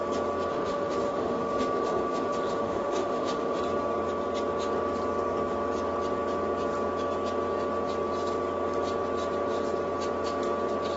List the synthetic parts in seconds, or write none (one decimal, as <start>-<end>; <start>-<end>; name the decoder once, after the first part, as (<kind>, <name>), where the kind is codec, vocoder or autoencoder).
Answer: 0.5-3.6 (autoencoder, DAC-VAE)